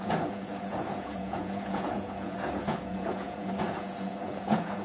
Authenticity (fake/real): fake